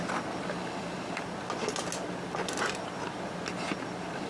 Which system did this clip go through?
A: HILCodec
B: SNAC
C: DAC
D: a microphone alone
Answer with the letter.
D